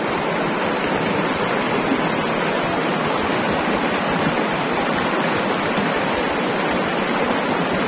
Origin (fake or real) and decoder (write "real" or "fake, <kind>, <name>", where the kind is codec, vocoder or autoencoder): real